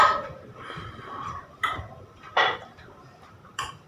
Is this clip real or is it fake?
fake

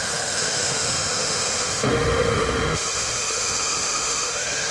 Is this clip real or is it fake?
fake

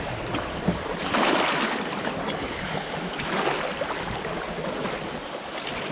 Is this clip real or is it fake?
real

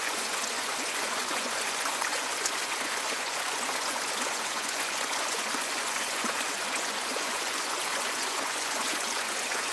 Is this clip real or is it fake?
fake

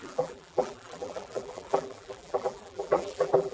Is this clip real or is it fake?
fake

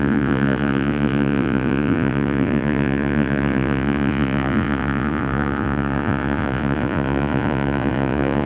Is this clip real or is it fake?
fake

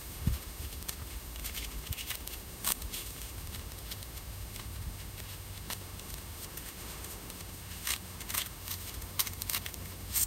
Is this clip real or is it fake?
fake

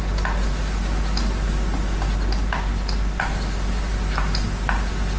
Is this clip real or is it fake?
real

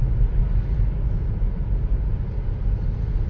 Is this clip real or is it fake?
real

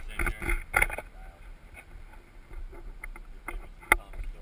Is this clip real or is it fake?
real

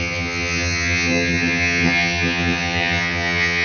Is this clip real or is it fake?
fake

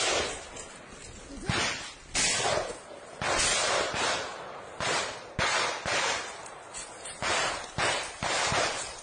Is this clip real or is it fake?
real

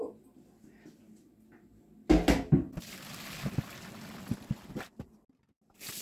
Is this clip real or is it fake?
real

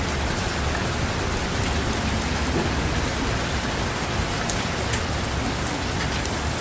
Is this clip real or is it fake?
real